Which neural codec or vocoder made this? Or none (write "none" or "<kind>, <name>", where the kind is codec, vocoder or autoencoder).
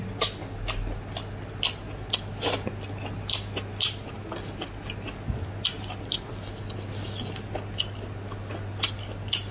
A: none